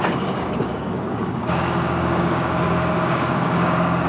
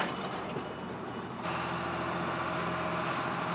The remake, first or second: first